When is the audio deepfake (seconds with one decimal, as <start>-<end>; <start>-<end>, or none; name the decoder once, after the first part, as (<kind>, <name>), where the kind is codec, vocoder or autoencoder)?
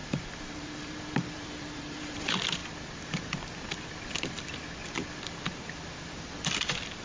0.0-2.6 (vocoder, BigVGAN v2)